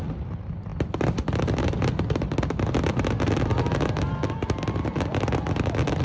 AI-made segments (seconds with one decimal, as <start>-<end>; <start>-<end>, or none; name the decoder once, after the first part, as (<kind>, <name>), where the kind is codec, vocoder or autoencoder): none